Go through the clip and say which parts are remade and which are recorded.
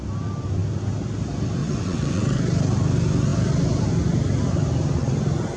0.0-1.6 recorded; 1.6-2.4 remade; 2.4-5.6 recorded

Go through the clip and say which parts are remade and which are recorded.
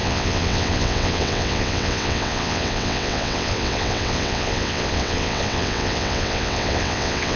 0.0-7.4 remade